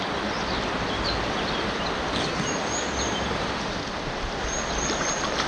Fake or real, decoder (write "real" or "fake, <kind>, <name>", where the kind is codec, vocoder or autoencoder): real